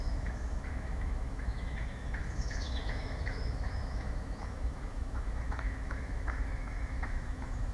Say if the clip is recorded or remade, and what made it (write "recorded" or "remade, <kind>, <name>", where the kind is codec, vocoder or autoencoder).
remade, autoencoder, DAC-VAE